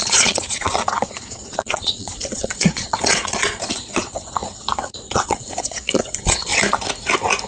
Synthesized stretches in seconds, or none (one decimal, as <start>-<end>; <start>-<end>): 0.0-6.5